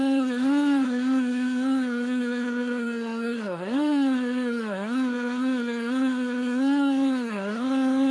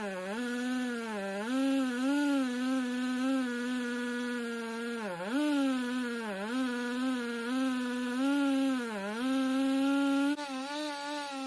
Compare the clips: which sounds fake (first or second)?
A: first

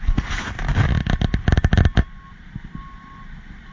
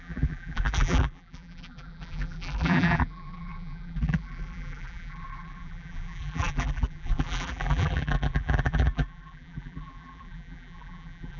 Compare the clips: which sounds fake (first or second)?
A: second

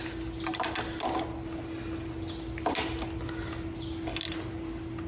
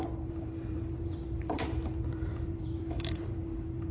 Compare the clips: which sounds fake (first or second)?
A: second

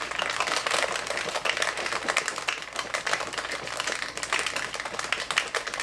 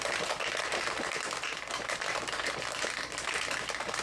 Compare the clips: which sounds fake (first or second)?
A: second